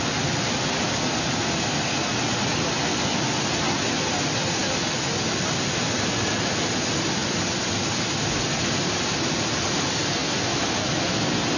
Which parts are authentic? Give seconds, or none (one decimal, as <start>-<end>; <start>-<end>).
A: 0.0-11.6